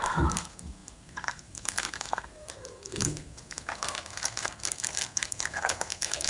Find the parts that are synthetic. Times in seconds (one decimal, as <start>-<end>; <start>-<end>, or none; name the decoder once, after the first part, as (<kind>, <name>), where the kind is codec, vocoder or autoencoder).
0.0-6.3 (codec, SNAC)